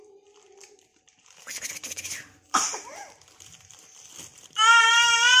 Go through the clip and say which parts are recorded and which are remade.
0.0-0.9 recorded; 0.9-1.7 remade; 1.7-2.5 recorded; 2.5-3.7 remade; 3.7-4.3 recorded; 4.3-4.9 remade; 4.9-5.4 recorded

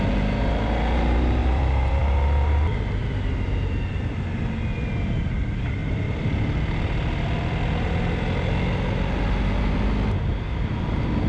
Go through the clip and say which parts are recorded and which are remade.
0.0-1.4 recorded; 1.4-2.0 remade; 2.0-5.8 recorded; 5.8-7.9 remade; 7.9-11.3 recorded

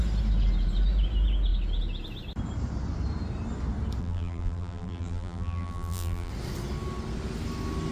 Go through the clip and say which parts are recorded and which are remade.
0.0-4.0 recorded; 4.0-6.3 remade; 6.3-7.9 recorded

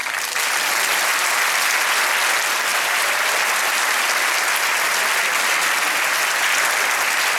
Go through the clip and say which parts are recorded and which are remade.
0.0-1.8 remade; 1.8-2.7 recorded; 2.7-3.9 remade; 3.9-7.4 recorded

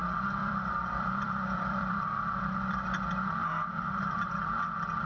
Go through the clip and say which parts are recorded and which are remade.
0.0-3.1 remade; 3.1-3.5 recorded; 3.5-4.3 remade; 4.3-5.1 recorded

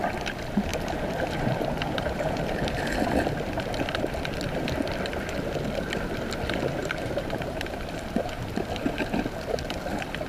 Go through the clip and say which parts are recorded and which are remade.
0.0-0.7 recorded; 0.7-2.8 remade; 2.8-6.8 recorded; 6.8-8.4 remade; 8.4-10.3 recorded

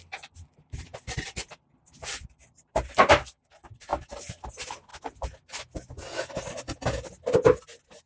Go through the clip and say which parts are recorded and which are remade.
0.0-3.9 remade; 3.9-4.5 recorded; 4.5-4.9 remade; 4.9-8.1 recorded